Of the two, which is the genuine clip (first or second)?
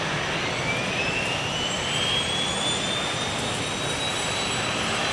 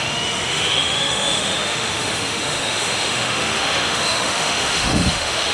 first